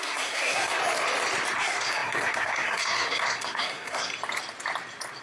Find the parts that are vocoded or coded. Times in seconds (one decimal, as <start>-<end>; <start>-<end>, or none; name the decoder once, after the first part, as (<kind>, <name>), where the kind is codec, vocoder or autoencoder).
0.0-0.8 (codec, SNAC); 1.6-4.1